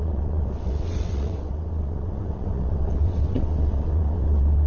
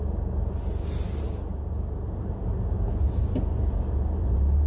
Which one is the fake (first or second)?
first